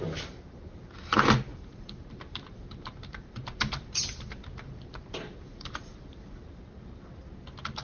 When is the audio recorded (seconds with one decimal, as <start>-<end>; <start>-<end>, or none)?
0.0-1.5; 6.1-7.8